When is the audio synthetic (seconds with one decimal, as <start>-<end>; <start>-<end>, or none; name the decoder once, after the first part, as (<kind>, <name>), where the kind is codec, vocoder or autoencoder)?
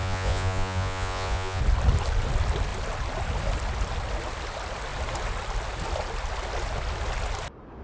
0.0-1.6 (vocoder, Vocos)